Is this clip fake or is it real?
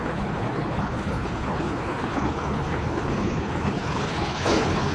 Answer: fake